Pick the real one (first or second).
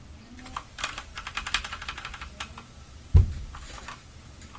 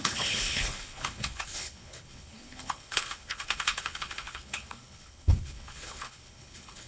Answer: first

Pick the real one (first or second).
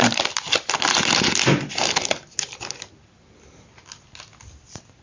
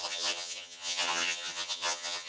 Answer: first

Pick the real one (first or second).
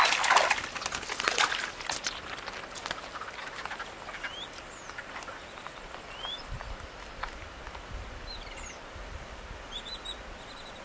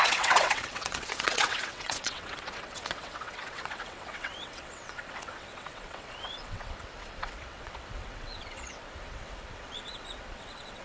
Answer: first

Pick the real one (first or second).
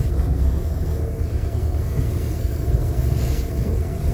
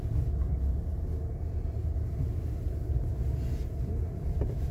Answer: second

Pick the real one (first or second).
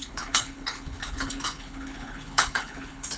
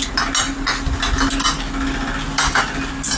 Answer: second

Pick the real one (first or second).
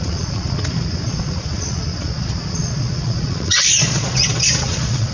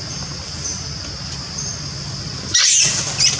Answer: second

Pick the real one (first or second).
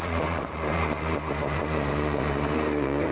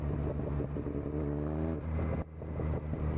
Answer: second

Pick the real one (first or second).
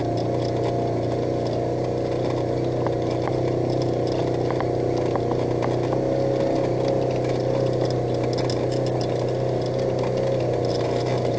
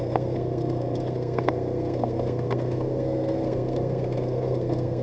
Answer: first